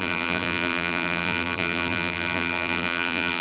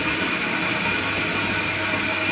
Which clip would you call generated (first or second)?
first